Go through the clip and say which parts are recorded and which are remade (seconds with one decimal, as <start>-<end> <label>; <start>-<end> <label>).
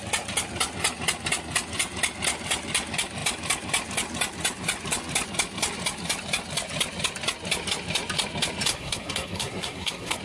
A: 0.0-8.7 recorded; 8.7-10.2 remade